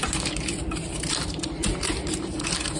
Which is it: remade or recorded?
remade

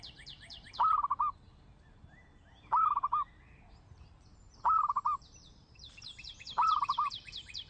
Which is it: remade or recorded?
remade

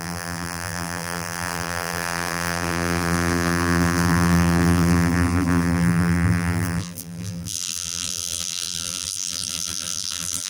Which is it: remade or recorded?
remade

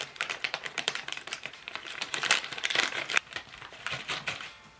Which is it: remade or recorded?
remade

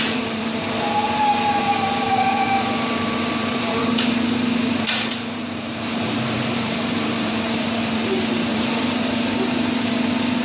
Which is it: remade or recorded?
remade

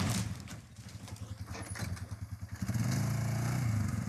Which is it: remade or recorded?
recorded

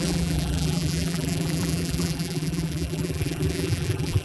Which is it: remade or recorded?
remade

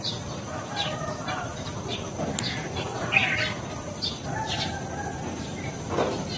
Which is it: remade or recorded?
recorded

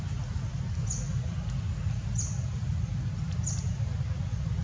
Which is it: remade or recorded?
recorded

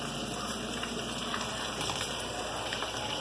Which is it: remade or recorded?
remade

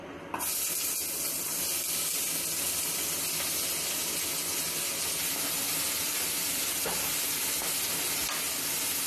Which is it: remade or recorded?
recorded